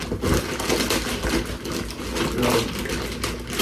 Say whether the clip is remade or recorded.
recorded